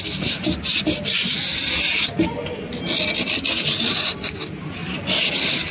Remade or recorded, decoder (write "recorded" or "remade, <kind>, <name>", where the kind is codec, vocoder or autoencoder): recorded